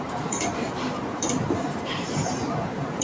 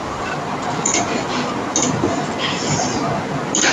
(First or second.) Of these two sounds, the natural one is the second